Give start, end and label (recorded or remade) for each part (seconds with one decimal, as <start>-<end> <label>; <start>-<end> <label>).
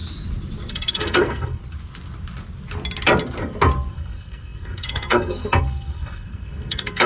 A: 0.0-0.7 recorded; 0.7-1.6 remade; 1.6-3.9 recorded; 3.9-7.1 remade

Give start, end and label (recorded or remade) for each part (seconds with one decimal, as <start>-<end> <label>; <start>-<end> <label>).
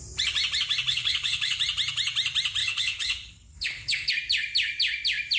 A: 0.0-0.9 recorded; 0.9-1.6 remade; 1.6-2.6 recorded; 2.6-4.1 remade; 4.1-5.4 recorded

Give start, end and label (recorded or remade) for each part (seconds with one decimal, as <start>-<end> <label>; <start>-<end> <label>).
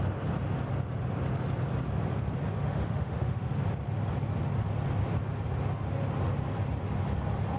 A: 0.0-2.6 recorded; 2.6-3.6 remade; 3.6-7.6 recorded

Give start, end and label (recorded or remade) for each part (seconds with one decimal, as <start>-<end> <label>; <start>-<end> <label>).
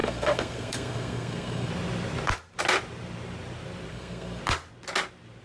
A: 0.0-1.7 remade; 1.7-3.9 recorded; 3.9-4.4 remade; 4.4-5.4 recorded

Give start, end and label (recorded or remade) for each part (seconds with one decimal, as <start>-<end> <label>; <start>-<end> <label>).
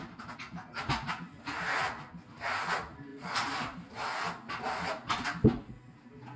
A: 0.0-3.1 recorded; 3.1-3.9 remade; 3.9-6.4 recorded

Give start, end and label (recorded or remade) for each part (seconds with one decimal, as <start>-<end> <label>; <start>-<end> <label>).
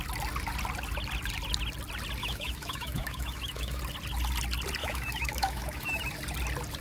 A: 0.0-2.2 recorded; 2.2-3.8 remade; 3.8-4.8 recorded; 4.8-6.0 remade; 6.0-6.8 recorded